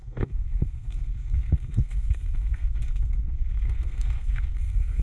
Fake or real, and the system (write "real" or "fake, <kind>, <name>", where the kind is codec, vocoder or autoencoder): fake, codec, SNAC